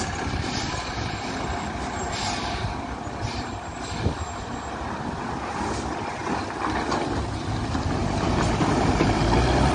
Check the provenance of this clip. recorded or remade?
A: recorded